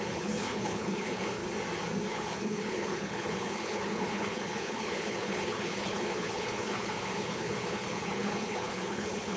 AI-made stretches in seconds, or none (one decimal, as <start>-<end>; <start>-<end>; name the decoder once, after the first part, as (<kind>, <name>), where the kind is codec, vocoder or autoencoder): 0.0-1.4 (codec, HILCodec); 2.1-9.4